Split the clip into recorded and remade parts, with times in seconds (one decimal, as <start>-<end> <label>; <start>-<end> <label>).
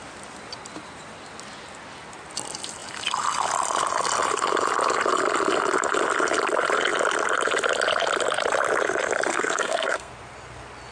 0.0-9.3 recorded; 9.3-10.1 remade; 10.1-10.9 recorded